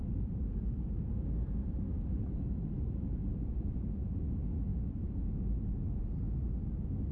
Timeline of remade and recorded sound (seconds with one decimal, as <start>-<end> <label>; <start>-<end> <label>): 0.0-4.0 remade; 4.0-4.7 recorded; 4.7-5.8 remade; 5.8-7.1 recorded